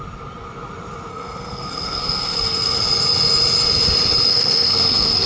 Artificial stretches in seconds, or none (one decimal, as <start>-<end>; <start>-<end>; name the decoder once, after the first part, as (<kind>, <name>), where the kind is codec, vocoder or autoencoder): 1.1-2.8 (codec, SNAC); 4.3-5.3